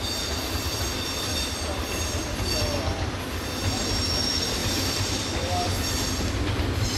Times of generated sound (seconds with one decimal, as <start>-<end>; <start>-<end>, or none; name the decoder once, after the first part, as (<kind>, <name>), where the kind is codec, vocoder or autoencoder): 1.3-3.3 (vocoder, BigVGAN v2); 4.6-5.5